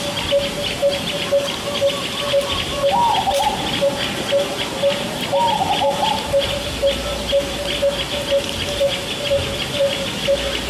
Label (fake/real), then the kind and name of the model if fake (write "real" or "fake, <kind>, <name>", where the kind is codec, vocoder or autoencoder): real